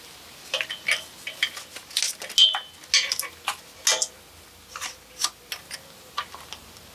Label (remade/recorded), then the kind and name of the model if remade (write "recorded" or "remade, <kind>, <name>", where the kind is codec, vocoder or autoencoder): recorded